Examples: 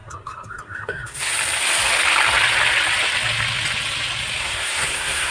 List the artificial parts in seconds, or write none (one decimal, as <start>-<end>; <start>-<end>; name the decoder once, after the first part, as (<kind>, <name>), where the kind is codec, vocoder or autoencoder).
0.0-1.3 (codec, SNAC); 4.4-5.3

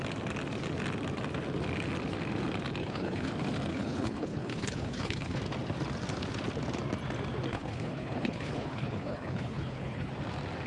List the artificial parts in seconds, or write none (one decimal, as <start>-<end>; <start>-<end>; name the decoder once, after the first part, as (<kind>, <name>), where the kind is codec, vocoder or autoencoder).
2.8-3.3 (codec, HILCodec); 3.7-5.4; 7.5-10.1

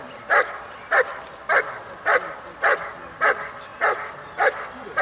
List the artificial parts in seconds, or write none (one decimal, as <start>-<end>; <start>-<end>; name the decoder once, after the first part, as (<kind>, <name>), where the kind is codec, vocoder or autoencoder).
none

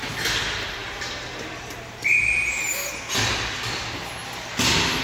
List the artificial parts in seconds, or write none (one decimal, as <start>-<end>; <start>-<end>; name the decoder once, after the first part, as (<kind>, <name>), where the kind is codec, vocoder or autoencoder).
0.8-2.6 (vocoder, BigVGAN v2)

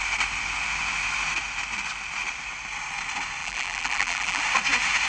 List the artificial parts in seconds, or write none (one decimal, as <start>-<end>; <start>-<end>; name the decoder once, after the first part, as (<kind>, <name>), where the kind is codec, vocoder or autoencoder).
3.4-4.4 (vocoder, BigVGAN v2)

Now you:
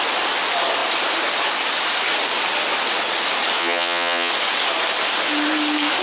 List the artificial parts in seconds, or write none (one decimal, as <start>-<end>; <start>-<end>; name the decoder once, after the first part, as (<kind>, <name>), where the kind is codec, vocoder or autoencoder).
3.6-4.3 (vocoder, HiFi-GAN)